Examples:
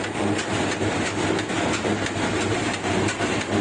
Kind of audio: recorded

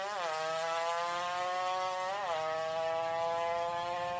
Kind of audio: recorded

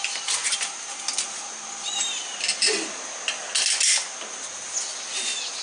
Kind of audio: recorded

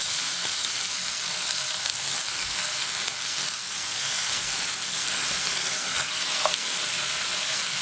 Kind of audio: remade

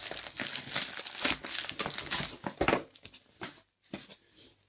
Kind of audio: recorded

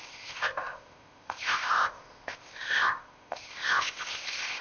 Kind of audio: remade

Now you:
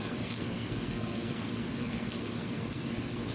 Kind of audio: remade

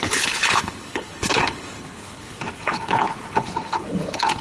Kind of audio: remade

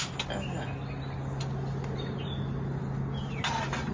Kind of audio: recorded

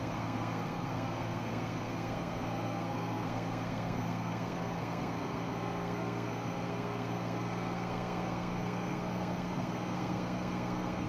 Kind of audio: remade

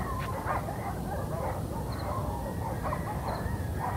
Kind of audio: recorded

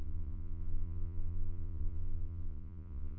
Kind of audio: remade